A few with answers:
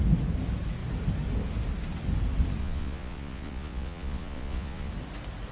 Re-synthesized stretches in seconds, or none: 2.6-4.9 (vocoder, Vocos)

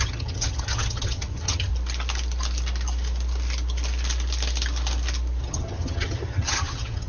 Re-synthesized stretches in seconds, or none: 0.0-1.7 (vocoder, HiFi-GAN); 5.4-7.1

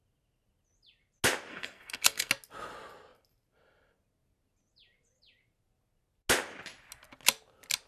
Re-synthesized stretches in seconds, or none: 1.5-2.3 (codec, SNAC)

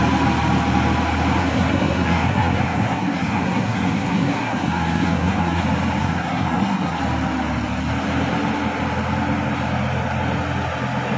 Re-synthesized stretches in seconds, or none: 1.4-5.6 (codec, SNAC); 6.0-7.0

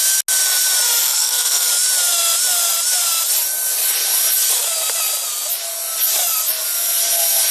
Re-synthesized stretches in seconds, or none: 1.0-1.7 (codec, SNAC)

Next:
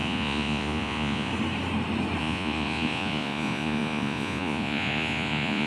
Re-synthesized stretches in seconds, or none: 0.0-1.3 (vocoder, Vocos); 2.2-5.7

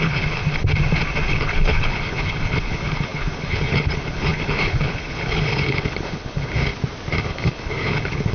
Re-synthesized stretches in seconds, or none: 0.0-0.4 (codec, HILCodec); 1.3-6.7; 7.2-8.3